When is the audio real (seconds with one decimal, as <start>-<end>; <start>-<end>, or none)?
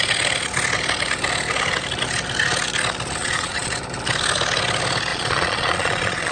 0.0-3.2; 3.7-5.1